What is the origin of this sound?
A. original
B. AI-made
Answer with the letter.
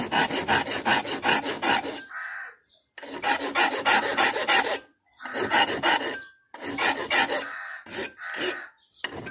A